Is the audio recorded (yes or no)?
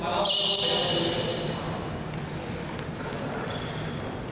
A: yes